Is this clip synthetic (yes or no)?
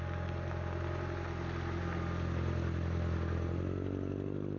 no